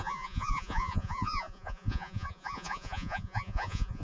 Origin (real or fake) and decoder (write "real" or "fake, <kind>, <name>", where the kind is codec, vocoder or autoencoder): fake, vocoder, Vocos